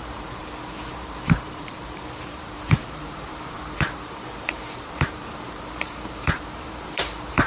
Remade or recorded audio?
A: remade